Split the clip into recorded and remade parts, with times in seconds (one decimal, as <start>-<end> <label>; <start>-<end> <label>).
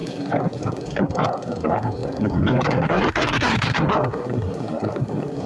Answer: 0.0-5.5 remade